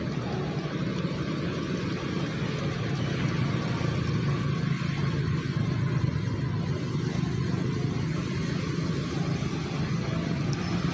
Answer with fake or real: real